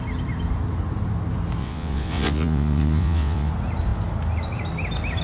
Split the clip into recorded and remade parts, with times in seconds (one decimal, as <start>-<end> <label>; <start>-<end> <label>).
0.0-1.6 recorded; 1.6-3.5 remade; 3.5-5.2 recorded